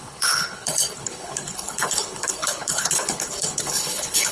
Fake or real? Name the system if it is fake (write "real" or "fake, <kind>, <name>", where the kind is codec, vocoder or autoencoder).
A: fake, codec, HILCodec